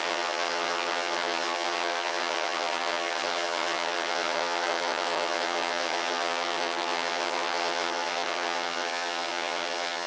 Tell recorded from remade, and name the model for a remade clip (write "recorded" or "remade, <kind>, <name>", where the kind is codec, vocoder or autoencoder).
remade, vocoder, HiFi-GAN